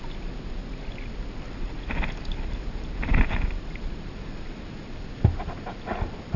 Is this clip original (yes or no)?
yes